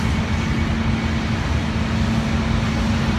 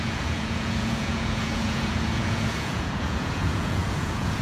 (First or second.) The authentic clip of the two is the first